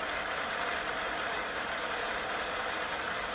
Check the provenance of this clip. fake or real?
fake